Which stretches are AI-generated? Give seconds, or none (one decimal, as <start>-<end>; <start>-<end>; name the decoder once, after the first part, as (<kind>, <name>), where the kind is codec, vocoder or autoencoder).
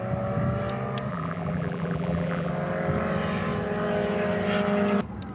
1.1-2.5 (vocoder, BigVGAN v2)